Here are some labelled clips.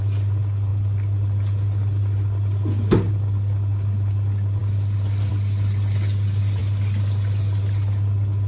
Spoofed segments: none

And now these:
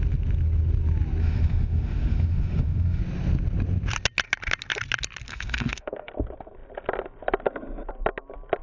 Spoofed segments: 1.2-3.0; 5.3-6.1

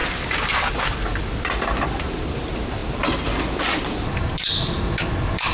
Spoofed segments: 0.0-5.5

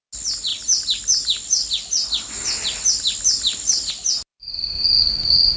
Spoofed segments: none

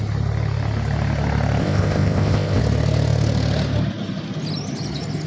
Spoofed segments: 1.6-2.6

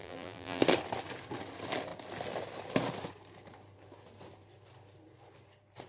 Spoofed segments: 0.0-0.6